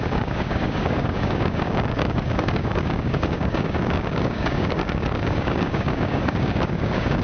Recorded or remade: remade